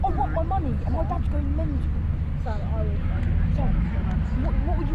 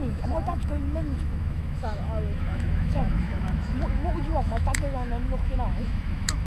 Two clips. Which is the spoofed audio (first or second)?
second